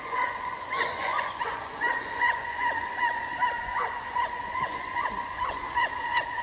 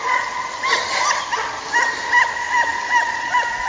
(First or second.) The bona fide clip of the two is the second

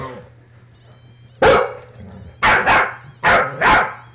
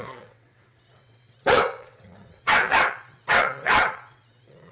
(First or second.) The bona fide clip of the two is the first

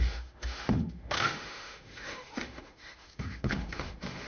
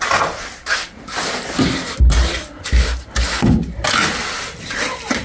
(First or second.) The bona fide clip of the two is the second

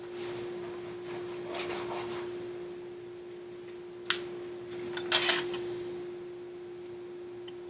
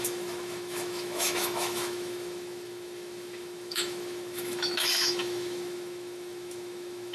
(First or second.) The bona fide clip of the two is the first